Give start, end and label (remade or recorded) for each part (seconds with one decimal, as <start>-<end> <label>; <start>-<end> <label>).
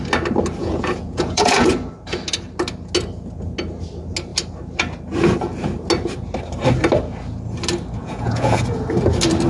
0.0-0.6 recorded; 0.6-1.7 remade; 1.7-8.0 recorded; 8.0-8.6 remade; 8.6-9.5 recorded